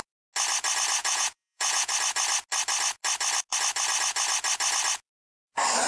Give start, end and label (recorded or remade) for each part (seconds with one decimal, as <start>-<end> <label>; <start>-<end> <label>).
0.0-1.0 recorded; 1.0-1.9 remade; 1.9-5.9 recorded